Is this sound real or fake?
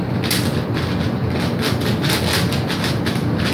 real